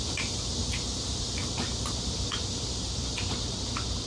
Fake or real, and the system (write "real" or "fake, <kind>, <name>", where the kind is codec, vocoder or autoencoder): fake, vocoder, BigVGAN v2